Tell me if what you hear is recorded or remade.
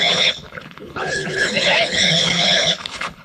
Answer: remade